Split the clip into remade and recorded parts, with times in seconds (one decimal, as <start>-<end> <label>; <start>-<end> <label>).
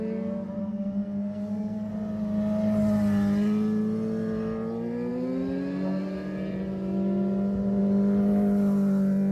0.0-0.6 recorded; 0.6-1.9 remade; 1.9-9.3 recorded